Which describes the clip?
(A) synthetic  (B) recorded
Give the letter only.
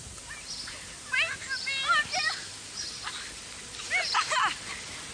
B